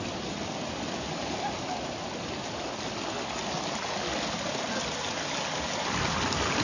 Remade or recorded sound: recorded